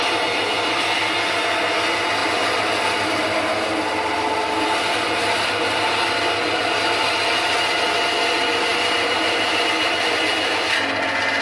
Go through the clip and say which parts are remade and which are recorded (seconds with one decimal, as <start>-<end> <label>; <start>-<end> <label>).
0.0-11.4 recorded